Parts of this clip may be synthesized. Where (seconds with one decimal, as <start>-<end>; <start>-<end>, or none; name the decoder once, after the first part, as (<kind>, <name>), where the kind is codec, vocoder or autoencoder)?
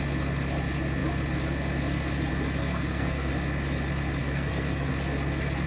2.7-3.3 (codec, SNAC); 4.2-4.9